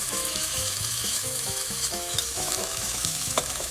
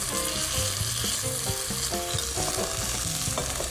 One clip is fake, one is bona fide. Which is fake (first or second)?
first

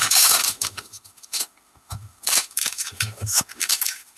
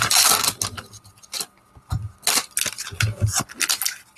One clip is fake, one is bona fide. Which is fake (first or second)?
first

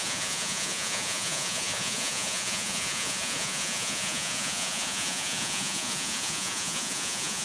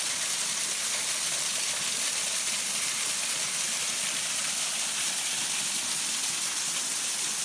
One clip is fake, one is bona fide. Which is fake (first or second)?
first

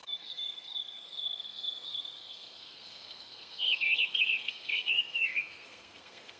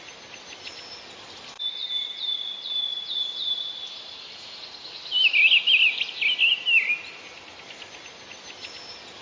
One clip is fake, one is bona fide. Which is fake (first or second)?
first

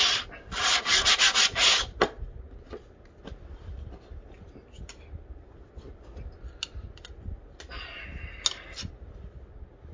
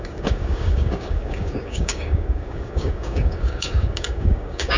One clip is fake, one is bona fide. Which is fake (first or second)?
second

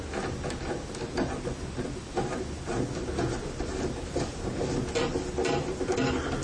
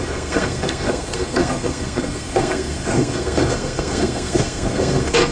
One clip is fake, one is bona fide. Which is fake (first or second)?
second